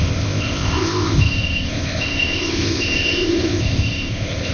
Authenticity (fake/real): fake